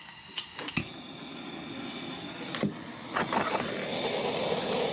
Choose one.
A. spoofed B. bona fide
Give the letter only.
B